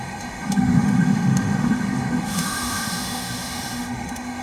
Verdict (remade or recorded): remade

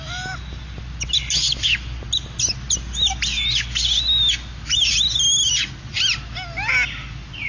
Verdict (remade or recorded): recorded